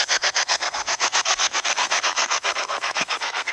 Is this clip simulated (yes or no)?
yes